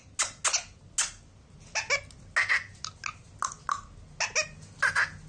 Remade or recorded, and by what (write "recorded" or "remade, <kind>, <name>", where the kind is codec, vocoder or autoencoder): recorded